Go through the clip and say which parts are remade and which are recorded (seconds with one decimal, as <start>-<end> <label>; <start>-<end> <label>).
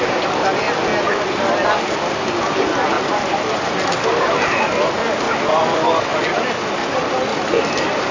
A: 0.0-8.1 recorded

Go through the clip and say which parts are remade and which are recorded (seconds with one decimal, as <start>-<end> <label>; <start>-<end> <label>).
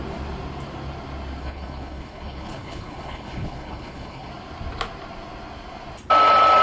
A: 0.0-1.4 recorded; 1.4-4.3 remade; 4.3-6.6 recorded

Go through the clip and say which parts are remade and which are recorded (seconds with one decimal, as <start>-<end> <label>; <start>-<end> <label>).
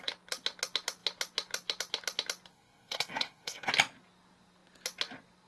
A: 0.0-2.5 recorded; 2.5-3.7 remade; 3.7-5.5 recorded